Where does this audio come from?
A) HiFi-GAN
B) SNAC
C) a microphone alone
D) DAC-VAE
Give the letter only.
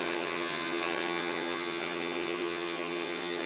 A